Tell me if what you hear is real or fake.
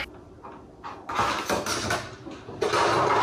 real